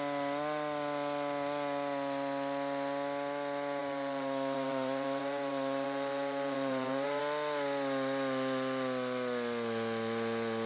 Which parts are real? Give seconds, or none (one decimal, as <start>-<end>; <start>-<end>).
0.0-3.8; 7.2-10.7